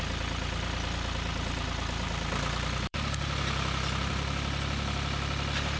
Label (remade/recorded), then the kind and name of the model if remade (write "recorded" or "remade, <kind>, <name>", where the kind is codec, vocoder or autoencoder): remade, vocoder, BigVGAN v2